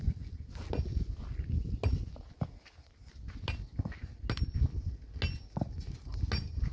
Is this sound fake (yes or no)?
no